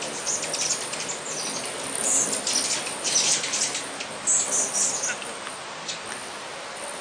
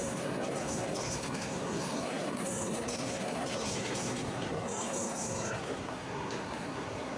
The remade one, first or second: second